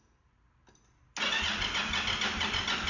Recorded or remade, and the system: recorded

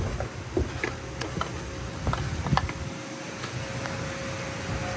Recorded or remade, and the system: recorded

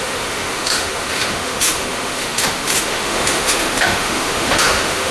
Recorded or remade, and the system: remade, autoencoder, DAC-VAE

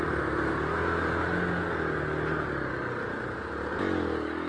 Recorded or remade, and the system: recorded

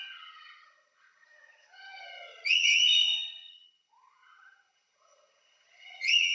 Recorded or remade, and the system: remade, vocoder, HiFi-GAN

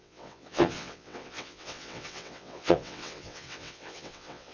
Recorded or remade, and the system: remade, vocoder, WaveNeXt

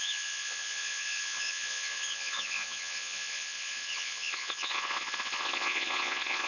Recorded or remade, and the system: remade, vocoder, Vocos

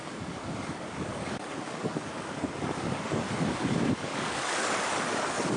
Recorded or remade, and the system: remade, codec, DAC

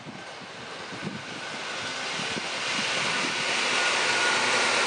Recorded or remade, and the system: recorded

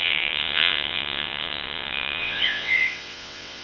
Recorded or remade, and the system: remade, vocoder, WaveNeXt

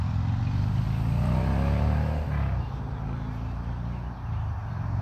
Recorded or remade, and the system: recorded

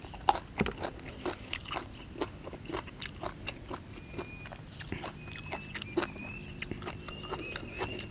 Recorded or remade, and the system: recorded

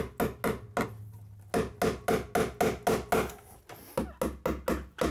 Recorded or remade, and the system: recorded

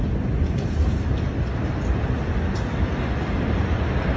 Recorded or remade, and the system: recorded